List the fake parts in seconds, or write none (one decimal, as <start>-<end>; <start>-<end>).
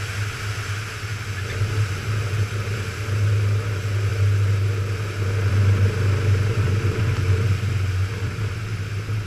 none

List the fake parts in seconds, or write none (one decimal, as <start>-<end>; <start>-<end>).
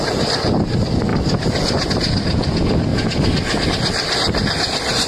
none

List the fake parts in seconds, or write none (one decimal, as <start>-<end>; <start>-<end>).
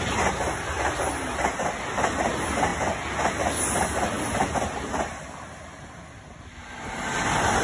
none